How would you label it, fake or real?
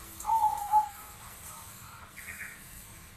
fake